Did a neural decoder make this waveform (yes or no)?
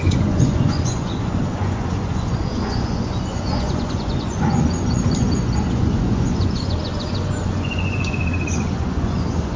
yes